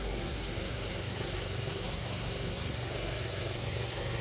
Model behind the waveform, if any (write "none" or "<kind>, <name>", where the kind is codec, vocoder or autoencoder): codec, SNAC